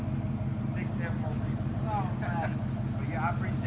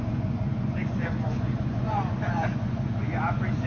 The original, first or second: first